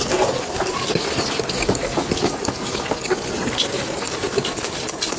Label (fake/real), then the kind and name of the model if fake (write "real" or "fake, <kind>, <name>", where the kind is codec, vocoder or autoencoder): real